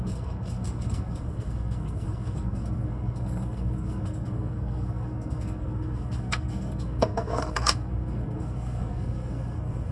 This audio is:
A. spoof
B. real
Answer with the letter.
A